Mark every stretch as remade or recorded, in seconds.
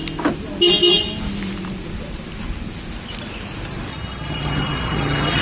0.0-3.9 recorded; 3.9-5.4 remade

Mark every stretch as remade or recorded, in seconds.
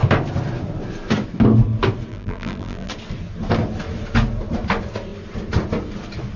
0.0-2.1 recorded; 2.1-2.9 remade; 2.9-6.4 recorded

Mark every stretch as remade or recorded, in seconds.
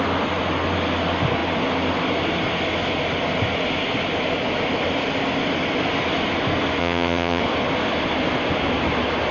0.0-6.8 recorded; 6.8-7.4 remade; 7.4-9.3 recorded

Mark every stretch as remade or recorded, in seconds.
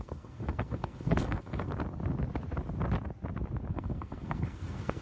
0.0-1.7 remade; 1.7-3.7 recorded; 3.7-5.0 remade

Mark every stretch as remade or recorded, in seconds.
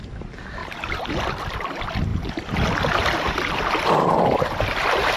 0.0-0.6 recorded; 0.6-1.4 remade; 1.4-5.2 recorded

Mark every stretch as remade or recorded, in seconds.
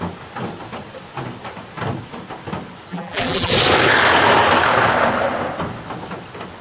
0.0-2.9 recorded; 2.9-3.5 remade; 3.5-6.6 recorded